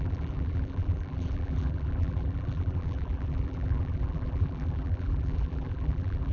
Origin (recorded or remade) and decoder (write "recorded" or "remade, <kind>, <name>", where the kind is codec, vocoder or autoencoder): remade, vocoder, BigVGAN v2